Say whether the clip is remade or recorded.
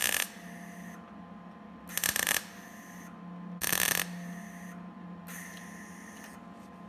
recorded